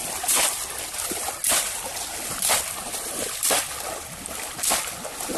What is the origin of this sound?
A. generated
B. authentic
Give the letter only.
B